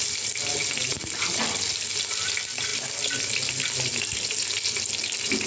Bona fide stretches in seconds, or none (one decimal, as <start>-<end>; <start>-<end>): 0.0-5.5